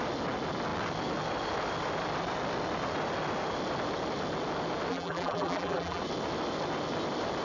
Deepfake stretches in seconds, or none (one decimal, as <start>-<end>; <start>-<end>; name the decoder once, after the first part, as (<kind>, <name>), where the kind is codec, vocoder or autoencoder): 4.9-6.0 (vocoder, BigVGAN v2)